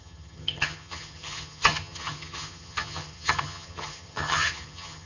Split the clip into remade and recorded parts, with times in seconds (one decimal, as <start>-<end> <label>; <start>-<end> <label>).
0.0-5.1 remade